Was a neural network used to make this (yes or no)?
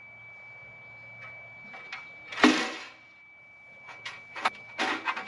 no